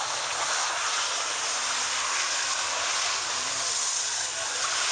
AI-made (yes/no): no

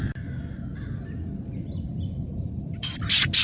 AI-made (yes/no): no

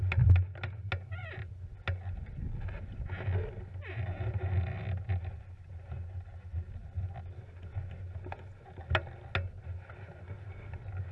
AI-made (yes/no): no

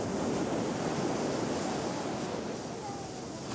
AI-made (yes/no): no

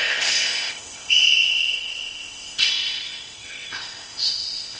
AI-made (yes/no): yes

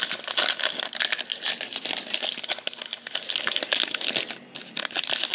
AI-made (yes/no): no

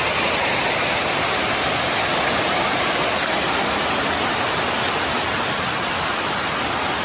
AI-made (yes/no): no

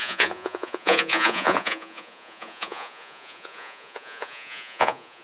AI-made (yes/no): yes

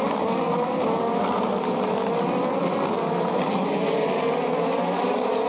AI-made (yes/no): no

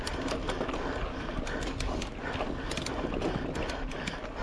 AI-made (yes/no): no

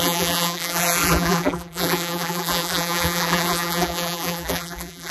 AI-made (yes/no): yes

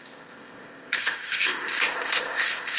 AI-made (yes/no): yes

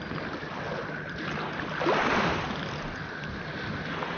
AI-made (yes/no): no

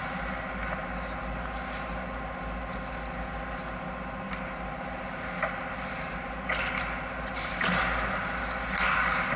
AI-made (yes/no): no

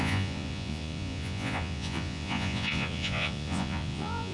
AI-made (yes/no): yes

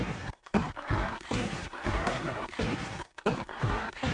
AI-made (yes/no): yes